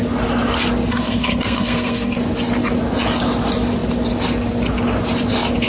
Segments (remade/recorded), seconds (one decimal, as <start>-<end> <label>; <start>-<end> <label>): 0.0-0.9 recorded; 0.9-2.2 remade; 2.2-5.7 recorded